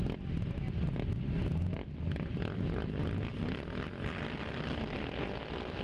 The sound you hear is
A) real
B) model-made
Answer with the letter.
A